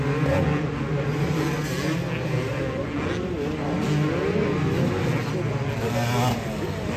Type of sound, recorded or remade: recorded